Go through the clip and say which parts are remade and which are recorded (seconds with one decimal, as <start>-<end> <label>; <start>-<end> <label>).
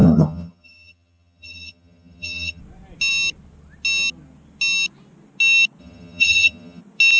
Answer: 0.0-2.6 remade; 2.6-5.8 recorded; 5.8-6.8 remade; 6.8-7.2 recorded